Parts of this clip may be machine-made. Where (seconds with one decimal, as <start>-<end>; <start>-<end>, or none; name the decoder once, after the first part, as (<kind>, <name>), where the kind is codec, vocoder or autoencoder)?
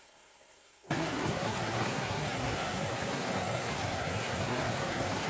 0.0-5.3 (codec, SNAC)